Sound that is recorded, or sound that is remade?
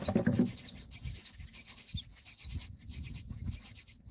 recorded